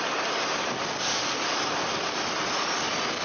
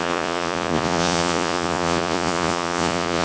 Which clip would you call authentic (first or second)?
first